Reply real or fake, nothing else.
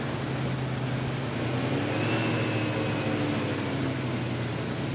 real